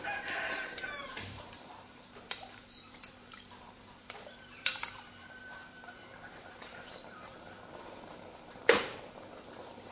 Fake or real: fake